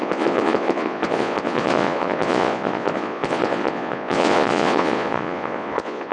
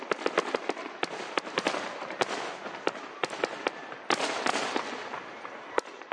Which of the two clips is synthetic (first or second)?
first